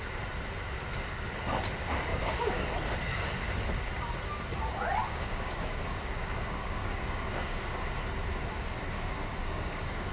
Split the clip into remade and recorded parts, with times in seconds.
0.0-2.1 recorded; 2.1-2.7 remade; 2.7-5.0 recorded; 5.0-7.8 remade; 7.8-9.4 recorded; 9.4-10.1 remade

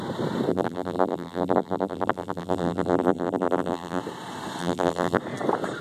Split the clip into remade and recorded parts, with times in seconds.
0.0-0.5 recorded; 0.5-4.0 remade; 4.0-4.6 recorded; 4.6-5.2 remade; 5.2-5.8 recorded